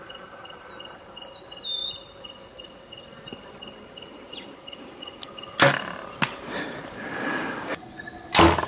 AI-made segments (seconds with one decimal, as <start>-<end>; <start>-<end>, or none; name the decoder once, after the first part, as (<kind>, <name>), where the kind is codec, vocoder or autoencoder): none